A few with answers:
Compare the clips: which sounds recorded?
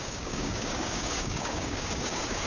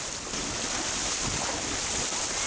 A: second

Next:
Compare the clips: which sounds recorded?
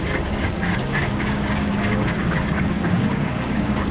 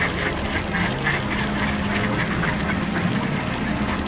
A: second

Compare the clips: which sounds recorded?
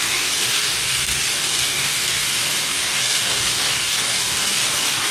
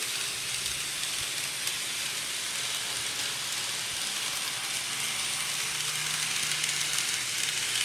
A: second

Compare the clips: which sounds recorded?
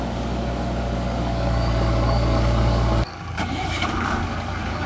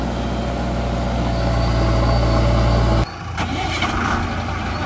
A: second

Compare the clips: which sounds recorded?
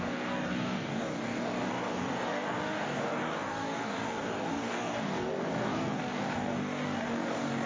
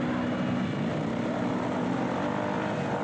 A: second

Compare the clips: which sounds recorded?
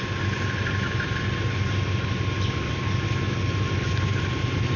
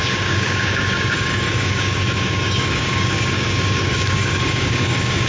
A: first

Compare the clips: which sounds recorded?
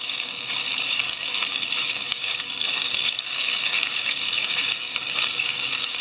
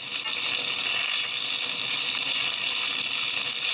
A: second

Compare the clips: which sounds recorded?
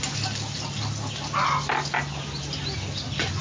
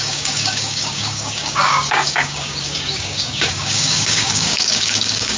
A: first